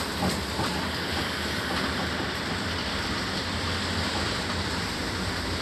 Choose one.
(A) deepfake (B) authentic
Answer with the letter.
A